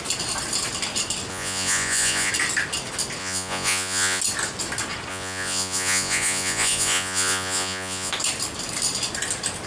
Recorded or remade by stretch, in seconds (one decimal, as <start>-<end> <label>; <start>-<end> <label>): 0.0-1.3 recorded; 1.3-2.3 remade; 2.3-3.2 recorded; 3.2-4.2 remade; 4.2-5.1 recorded; 5.1-8.1 remade; 8.1-9.7 recorded